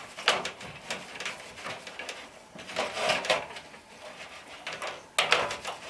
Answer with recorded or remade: recorded